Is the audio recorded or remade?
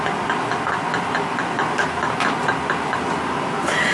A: recorded